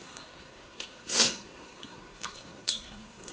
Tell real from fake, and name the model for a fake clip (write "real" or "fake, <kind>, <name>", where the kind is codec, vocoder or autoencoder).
fake, codec, SNAC